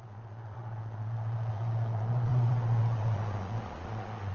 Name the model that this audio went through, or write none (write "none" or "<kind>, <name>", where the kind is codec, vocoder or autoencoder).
vocoder, Vocos